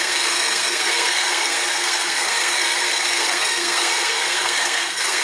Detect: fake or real fake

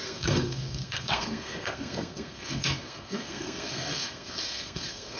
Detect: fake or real fake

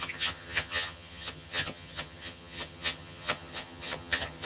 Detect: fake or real fake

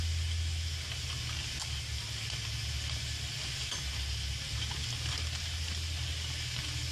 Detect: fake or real real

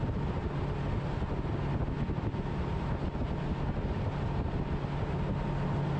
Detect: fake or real real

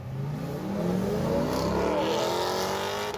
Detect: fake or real real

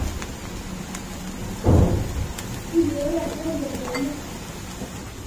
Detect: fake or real real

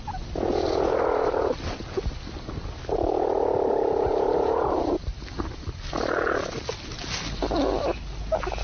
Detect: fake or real real